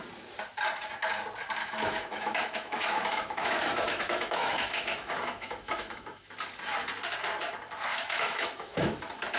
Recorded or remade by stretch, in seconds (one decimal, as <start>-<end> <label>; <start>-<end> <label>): 0.0-1.6 recorded; 1.6-6.3 remade; 6.3-7.9 recorded; 7.9-9.0 remade; 9.0-9.4 recorded